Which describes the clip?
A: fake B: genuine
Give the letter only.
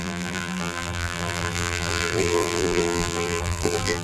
A